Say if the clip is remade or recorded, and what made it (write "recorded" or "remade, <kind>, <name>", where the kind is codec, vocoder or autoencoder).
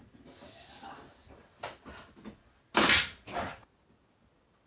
recorded